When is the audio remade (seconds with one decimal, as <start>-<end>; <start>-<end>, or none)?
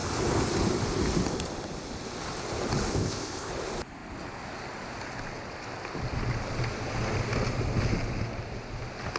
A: 2.9-3.5